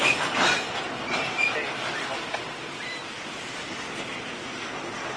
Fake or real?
real